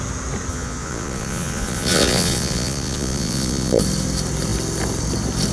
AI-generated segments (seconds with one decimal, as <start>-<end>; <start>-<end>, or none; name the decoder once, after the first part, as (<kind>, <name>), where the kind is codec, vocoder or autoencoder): 0.5-3.8 (vocoder, Vocos)